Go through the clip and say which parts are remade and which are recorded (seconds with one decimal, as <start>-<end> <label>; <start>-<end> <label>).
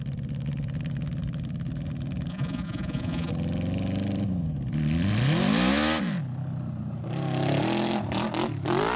0.0-2.3 recorded; 2.3-3.3 remade; 3.3-9.0 recorded